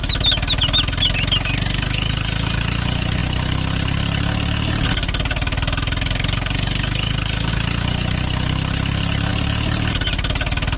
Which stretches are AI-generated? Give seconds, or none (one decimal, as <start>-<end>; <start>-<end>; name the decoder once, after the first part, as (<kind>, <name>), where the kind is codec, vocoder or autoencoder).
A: none